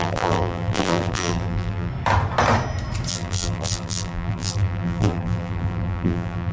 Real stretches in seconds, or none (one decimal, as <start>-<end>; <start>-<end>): 1.9-3.1